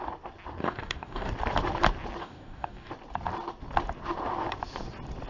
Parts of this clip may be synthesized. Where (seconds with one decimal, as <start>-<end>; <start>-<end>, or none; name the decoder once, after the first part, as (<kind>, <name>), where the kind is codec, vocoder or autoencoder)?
0.6-1.3 (codec, DAC); 2.2-2.9